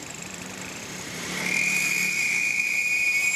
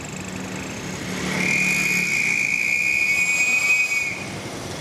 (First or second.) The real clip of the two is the second